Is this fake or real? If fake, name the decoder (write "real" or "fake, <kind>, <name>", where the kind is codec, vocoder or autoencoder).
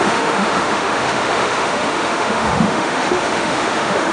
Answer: fake, autoencoder, DAC-VAE